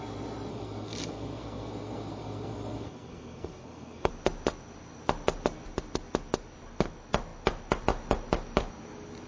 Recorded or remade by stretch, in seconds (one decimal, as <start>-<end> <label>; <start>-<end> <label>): 0.0-0.5 recorded; 0.5-4.1 remade; 4.1-9.3 recorded